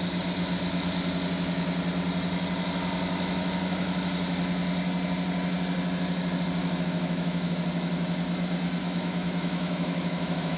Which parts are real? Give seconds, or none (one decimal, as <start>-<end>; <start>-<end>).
0.0-6.6; 7.5-8.8